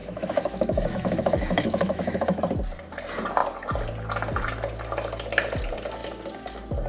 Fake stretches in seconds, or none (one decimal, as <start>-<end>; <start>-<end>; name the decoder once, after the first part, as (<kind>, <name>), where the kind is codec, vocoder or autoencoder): 0.0-2.4 (autoencoder, DAC-VAE)